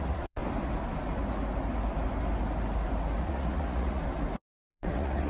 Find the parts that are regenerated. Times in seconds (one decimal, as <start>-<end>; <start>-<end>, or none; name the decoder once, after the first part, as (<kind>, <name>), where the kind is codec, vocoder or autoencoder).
0.0-0.4 (vocoder, Vocos); 3.2-4.0; 4.7-5.3